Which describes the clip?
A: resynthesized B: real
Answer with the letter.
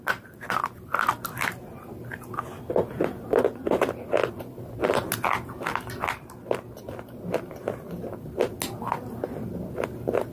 B